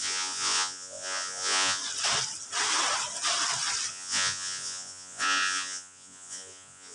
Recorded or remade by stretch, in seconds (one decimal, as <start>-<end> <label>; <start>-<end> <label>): 0.0-1.8 remade; 1.8-3.9 recorded; 3.9-6.9 remade